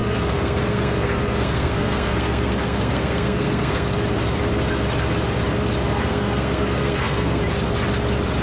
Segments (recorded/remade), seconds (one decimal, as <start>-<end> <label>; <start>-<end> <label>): 0.0-3.9 remade; 3.9-5.9 recorded; 5.9-7.4 remade; 7.4-8.4 recorded

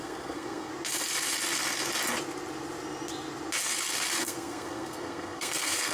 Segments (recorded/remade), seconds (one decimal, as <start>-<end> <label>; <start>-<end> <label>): 0.0-0.7 remade; 0.7-4.2 recorded; 4.2-5.9 remade

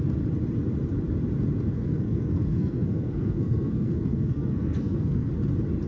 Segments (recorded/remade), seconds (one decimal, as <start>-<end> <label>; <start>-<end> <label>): 0.0-1.8 recorded; 1.8-5.3 remade; 5.3-5.9 recorded

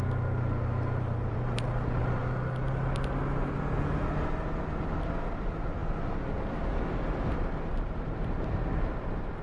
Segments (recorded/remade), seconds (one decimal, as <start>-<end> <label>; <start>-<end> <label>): 0.0-9.4 recorded

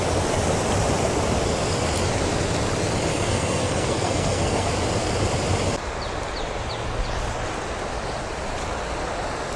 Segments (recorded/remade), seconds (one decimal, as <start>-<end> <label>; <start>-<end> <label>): 0.0-3.1 recorded; 3.1-4.7 remade; 4.7-9.6 recorded

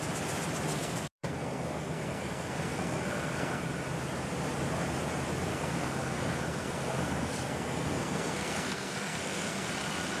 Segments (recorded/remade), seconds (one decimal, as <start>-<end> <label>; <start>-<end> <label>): 0.0-0.7 recorded; 0.7-3.6 remade; 3.6-5.5 recorded; 5.5-9.7 remade; 9.7-10.2 recorded